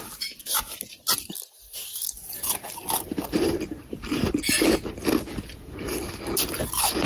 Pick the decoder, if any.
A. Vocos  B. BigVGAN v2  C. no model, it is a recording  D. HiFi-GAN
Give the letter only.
C